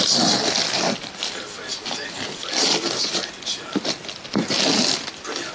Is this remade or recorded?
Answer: recorded